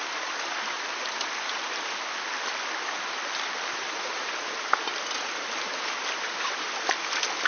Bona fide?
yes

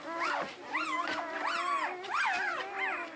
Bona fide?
yes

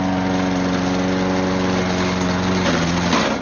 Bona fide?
yes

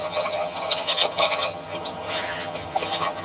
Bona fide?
no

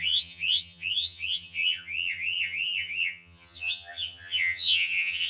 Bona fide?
no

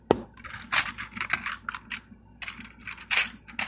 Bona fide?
yes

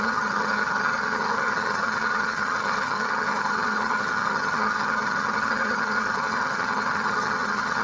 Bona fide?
no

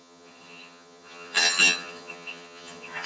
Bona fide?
no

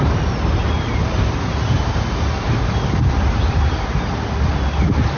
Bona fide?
yes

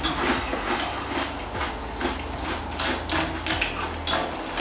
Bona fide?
yes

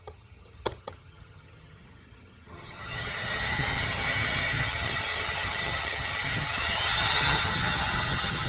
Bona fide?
no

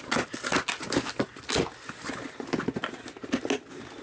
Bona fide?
yes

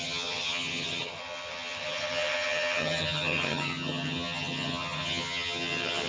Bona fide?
no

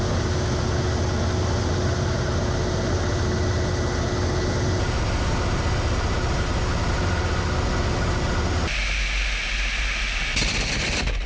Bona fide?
yes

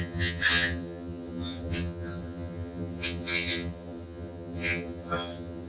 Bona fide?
no